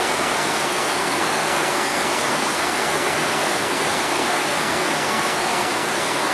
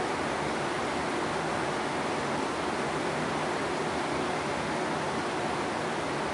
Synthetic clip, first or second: first